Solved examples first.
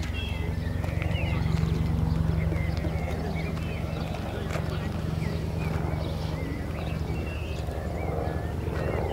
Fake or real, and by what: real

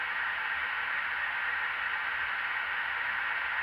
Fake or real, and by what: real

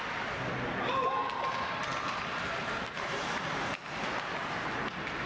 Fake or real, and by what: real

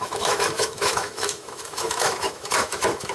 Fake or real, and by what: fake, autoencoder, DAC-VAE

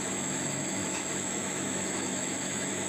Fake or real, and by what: fake, autoencoder, DAC-VAE